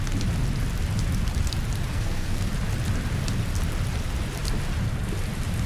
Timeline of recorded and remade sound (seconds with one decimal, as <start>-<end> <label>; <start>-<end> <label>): 0.0-1.9 recorded; 1.9-2.5 remade; 2.5-5.7 recorded